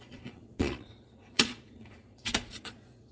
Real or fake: fake